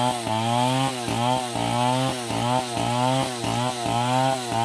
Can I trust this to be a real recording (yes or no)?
yes